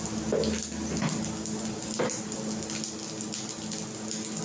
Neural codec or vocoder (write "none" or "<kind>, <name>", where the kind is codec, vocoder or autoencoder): none